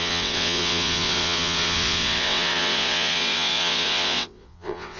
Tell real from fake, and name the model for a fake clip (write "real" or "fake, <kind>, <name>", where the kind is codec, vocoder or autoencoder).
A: fake, vocoder, WaveNeXt